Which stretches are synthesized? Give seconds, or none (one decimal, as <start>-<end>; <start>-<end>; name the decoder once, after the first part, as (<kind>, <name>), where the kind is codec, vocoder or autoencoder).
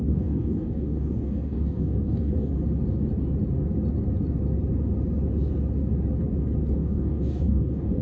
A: 0.0-2.5 (codec, DAC); 6.7-8.0